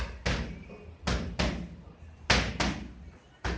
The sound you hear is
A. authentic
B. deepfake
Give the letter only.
A